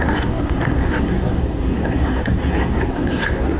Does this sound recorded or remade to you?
remade